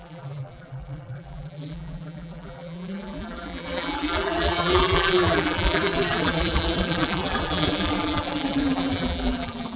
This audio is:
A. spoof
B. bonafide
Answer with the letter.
A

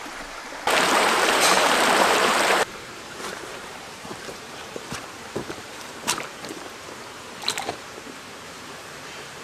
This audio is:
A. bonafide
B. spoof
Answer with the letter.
B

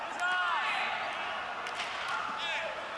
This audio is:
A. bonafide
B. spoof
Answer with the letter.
A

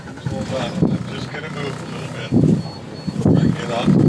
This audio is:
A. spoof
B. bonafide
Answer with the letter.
B